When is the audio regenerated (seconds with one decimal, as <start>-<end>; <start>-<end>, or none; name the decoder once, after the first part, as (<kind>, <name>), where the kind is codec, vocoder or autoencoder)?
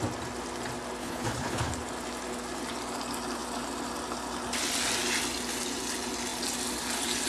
1.0-1.7 (codec, HILCodec)